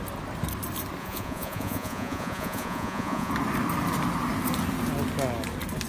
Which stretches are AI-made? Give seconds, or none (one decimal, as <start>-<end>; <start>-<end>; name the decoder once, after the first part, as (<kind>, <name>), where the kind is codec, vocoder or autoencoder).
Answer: 1.0-3.3 (vocoder, Vocos)